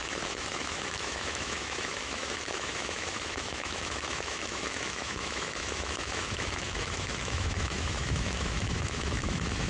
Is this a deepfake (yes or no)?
yes